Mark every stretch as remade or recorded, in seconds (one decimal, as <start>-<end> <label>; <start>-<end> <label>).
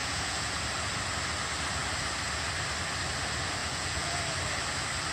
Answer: 0.0-0.6 remade; 0.6-3.6 recorded; 3.6-4.2 remade; 4.2-5.1 recorded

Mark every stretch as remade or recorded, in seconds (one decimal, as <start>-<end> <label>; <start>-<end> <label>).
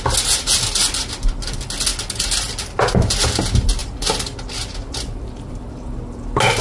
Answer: 0.0-6.6 recorded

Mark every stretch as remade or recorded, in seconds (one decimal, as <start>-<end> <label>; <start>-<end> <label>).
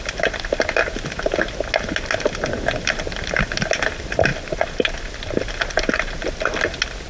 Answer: 0.0-7.1 recorded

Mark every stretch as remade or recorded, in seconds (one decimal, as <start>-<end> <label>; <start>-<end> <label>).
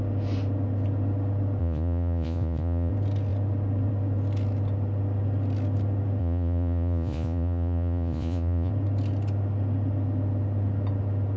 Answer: 0.0-1.6 recorded; 1.6-2.9 remade; 2.9-6.2 recorded; 6.2-8.7 remade; 8.7-11.4 recorded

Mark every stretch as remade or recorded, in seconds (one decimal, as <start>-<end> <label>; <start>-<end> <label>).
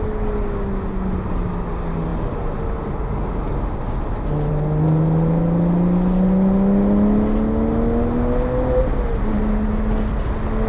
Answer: 0.0-10.7 recorded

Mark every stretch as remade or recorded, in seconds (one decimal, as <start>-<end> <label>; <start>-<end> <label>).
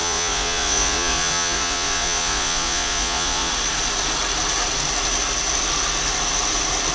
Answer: 0.0-3.5 remade; 3.5-6.9 recorded